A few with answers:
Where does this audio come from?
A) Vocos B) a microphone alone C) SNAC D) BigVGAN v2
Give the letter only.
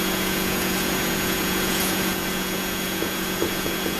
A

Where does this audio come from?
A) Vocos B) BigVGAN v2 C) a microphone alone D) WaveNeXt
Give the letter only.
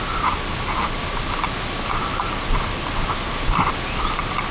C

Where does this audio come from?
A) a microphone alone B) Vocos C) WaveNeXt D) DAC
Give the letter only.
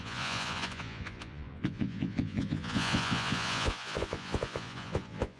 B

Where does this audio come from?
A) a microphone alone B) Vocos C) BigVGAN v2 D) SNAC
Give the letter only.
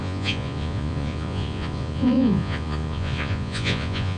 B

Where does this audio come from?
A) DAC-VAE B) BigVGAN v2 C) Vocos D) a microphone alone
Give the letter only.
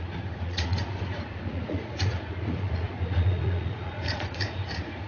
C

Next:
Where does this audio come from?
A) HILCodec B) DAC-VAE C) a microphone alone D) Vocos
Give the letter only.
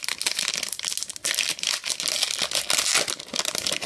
C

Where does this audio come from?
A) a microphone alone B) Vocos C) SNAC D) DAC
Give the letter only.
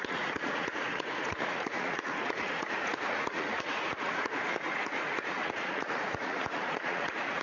B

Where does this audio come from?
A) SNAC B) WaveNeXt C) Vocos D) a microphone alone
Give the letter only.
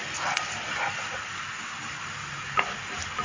D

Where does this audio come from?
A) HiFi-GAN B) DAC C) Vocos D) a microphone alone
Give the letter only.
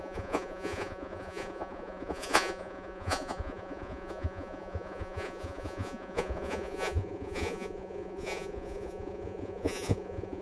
C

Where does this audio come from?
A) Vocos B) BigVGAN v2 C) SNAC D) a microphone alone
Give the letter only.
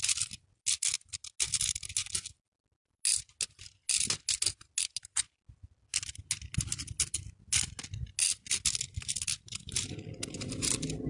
D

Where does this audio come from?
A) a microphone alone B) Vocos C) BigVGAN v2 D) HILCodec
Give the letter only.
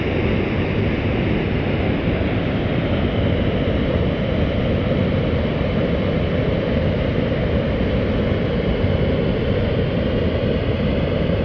A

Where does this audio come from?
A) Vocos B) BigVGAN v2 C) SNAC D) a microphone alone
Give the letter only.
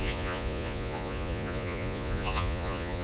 A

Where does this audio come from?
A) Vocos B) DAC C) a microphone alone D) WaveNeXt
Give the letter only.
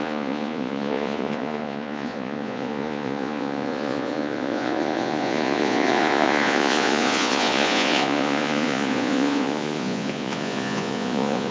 A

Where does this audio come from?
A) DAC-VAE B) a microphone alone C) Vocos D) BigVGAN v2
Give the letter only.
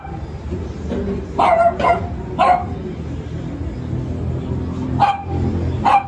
B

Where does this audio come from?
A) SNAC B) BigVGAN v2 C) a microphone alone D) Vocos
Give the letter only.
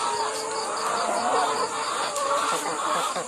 C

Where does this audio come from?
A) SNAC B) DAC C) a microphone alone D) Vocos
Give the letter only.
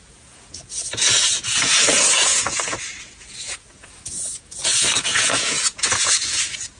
D